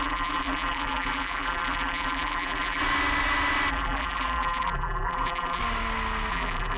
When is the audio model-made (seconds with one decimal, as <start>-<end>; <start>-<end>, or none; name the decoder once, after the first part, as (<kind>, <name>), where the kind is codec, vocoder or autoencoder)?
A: 0.0-2.8 (vocoder, BigVGAN v2); 3.7-5.6; 6.3-6.8